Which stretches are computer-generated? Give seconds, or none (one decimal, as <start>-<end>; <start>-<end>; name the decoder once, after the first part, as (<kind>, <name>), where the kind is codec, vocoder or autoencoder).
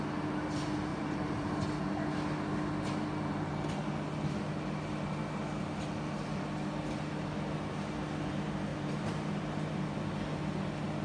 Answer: 0.9-1.6 (vocoder, BigVGAN v2); 8.7-9.7